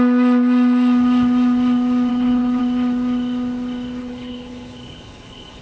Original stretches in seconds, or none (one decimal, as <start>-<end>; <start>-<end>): 0.0-2.1; 2.6-4.0